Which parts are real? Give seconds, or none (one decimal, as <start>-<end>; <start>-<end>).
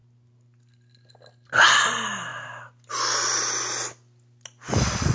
0.0-5.1